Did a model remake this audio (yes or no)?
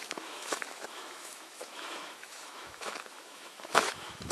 yes